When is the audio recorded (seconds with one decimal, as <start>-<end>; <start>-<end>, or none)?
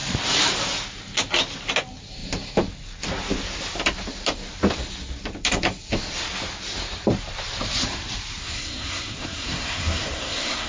0.0-8.4